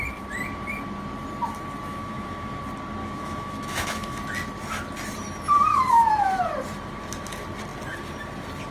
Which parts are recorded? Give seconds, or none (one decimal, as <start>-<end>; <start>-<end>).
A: 0.0-1.9; 2.6-3.0; 4.2-5.7; 6.3-8.7